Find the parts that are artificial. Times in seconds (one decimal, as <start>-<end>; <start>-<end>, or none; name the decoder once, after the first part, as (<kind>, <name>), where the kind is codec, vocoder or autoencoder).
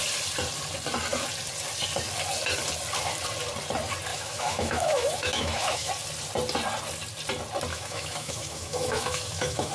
4.1-5.9 (autoencoder, DAC-VAE); 7.7-9.7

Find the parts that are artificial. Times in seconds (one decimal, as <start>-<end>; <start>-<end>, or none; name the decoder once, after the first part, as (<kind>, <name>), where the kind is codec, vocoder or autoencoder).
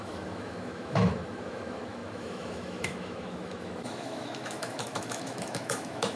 0.0-6.2 (autoencoder, DAC-VAE)